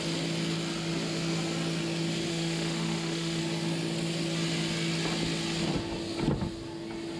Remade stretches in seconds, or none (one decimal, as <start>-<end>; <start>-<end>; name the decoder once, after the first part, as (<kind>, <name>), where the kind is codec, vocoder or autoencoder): 2.3-3.4 (autoencoder, DAC-VAE)